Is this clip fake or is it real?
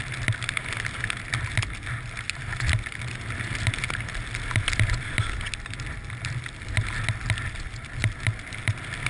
real